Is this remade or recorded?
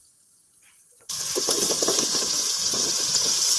remade